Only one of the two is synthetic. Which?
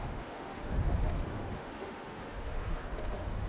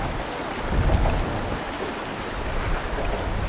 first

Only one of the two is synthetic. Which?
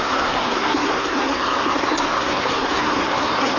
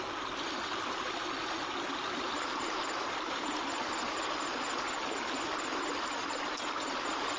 first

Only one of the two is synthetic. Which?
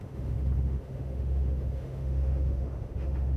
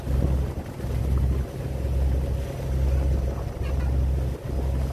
first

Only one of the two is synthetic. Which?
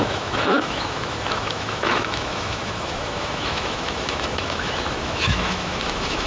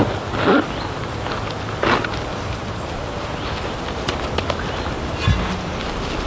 first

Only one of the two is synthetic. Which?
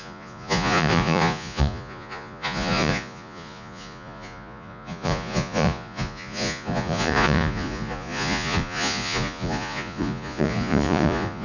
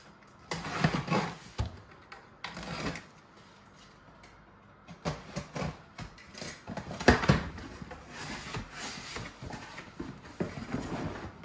first